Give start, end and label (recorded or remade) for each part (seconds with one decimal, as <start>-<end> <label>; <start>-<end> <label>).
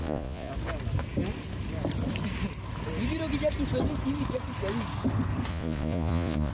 0.0-0.5 remade; 0.5-5.5 recorded; 5.5-6.5 remade